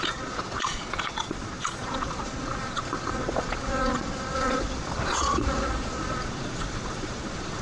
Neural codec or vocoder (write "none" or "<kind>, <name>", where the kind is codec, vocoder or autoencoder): vocoder, Vocos